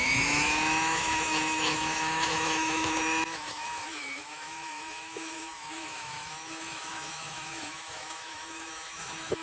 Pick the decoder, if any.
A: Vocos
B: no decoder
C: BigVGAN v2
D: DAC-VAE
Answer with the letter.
D